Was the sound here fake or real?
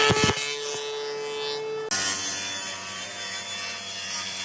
real